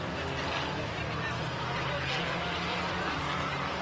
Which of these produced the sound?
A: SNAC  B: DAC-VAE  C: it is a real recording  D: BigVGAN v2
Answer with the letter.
C